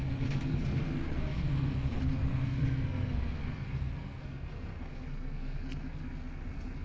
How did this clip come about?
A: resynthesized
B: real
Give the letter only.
A